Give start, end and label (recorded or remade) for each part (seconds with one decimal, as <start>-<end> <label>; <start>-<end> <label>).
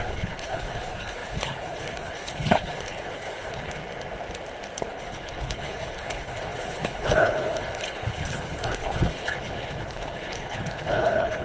0.0-3.8 remade; 3.8-4.8 recorded; 4.8-11.4 remade